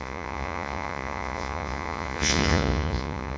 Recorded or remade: remade